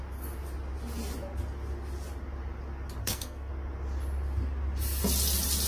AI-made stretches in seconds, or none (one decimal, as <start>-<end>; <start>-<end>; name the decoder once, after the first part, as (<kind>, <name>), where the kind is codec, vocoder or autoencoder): 3.0-3.5 (codec, SNAC)